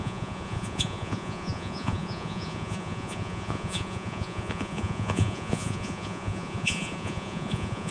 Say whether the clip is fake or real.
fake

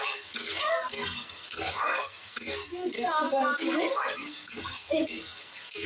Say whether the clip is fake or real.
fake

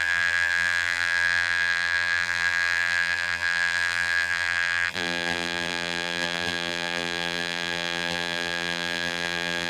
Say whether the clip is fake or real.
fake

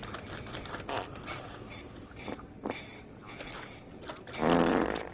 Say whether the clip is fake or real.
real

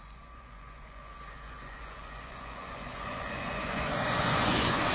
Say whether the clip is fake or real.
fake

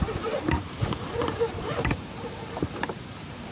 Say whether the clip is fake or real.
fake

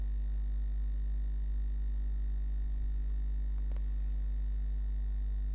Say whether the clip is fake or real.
real